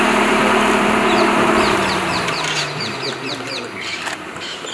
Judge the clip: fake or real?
fake